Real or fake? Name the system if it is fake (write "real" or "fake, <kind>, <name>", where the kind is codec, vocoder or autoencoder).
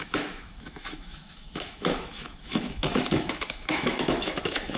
fake, autoencoder, DAC-VAE